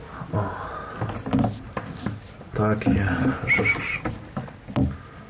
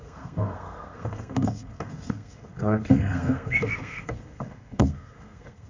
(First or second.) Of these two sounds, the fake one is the second